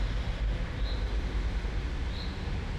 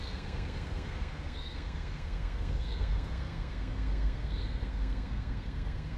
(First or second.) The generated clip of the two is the second